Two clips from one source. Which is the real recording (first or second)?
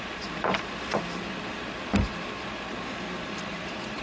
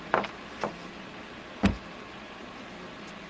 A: second